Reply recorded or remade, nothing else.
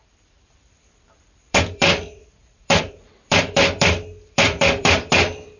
remade